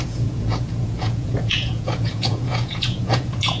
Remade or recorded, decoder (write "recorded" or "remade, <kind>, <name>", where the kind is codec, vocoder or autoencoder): remade, vocoder, Vocos